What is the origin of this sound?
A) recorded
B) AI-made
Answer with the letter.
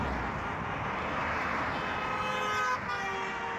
A